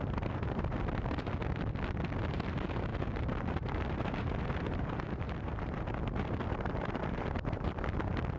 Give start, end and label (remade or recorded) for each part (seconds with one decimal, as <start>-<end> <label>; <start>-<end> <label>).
0.0-1.4 remade; 1.4-2.3 recorded; 2.3-8.4 remade